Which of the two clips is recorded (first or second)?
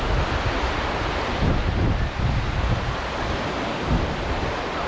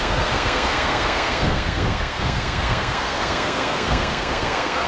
first